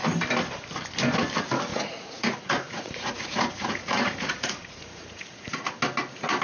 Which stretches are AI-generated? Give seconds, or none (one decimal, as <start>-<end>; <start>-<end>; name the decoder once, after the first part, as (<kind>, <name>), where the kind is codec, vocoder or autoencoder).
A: 1.7-5.5 (vocoder, Vocos)